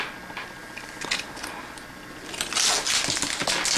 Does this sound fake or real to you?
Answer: real